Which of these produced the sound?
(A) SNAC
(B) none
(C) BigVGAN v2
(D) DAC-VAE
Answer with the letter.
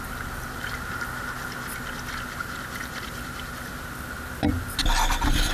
B